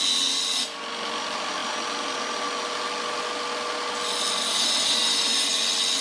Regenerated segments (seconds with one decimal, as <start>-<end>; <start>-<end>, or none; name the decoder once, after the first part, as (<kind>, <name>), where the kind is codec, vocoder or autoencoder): none